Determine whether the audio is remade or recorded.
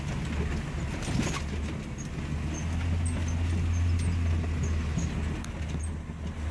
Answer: recorded